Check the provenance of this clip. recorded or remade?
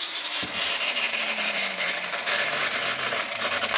remade